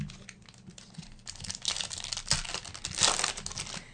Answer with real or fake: real